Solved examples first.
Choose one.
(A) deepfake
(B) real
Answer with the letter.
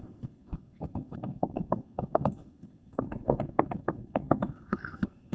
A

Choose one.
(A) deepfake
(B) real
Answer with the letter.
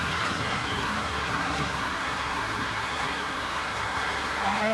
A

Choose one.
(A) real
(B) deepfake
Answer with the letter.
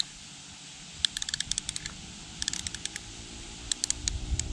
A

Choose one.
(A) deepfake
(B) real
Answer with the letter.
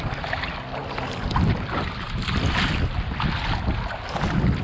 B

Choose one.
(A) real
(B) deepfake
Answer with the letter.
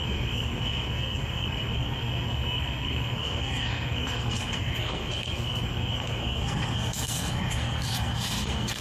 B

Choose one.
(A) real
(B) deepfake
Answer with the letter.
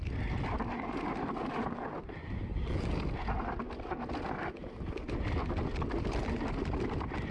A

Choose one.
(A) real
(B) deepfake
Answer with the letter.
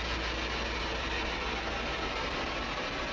A